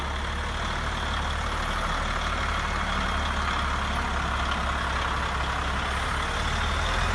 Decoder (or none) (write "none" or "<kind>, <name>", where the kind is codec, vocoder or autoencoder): none